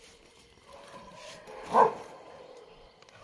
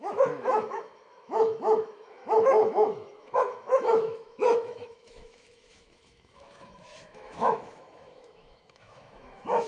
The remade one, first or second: second